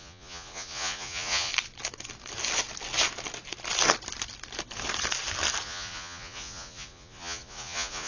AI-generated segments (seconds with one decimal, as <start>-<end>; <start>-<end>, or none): 0.0-1.5; 5.6-8.1